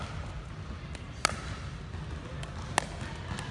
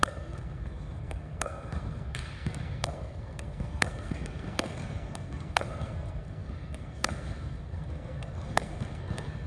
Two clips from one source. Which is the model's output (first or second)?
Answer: second